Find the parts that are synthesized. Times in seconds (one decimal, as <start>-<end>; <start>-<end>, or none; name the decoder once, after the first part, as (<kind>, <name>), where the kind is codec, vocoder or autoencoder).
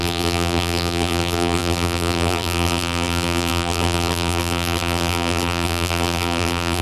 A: 0.0-6.8 (vocoder, BigVGAN v2)